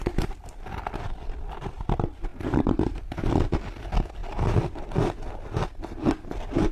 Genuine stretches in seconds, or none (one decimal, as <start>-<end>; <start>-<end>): 0.7-2.3; 3.3-6.7